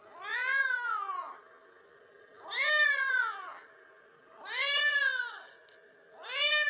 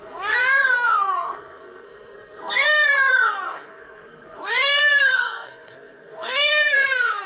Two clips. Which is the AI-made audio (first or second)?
second